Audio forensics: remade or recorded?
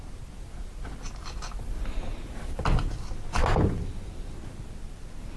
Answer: recorded